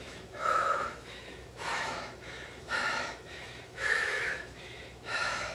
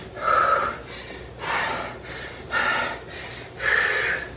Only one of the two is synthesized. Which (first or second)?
first